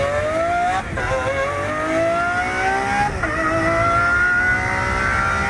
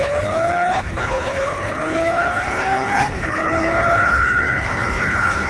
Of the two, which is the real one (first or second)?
first